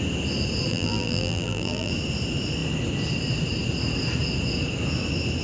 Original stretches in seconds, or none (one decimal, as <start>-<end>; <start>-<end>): 0.0-0.7; 1.9-5.4